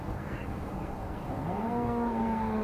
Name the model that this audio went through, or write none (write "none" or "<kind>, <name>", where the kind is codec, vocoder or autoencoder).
codec, SNAC